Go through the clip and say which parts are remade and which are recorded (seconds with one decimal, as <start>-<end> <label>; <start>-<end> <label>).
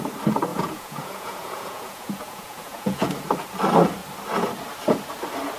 0.0-0.5 recorded; 0.5-3.1 remade; 3.1-5.6 recorded